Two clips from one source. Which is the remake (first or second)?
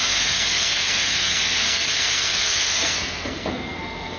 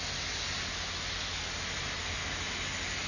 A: first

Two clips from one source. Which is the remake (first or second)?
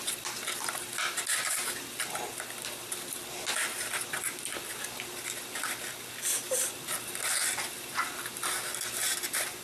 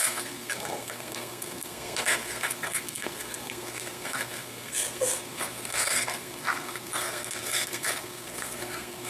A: second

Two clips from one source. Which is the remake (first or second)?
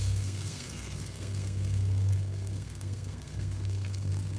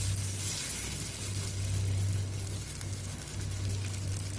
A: first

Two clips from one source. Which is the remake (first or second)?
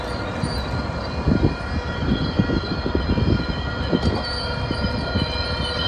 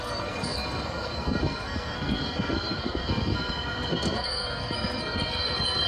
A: second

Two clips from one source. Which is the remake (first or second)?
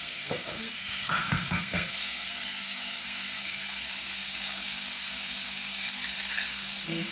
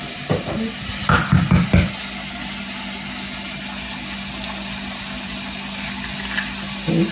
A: first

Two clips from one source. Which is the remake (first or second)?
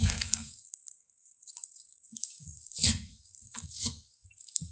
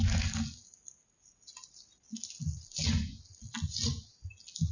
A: first